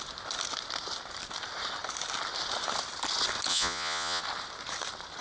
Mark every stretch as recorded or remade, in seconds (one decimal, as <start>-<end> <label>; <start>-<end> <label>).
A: 0.0-3.5 recorded; 3.5-4.2 remade; 4.2-5.2 recorded